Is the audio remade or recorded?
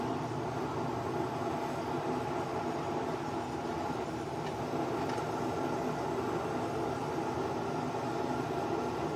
recorded